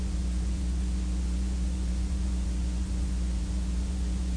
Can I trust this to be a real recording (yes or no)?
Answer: no